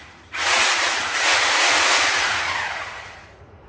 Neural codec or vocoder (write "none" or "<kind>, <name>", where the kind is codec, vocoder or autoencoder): vocoder, Vocos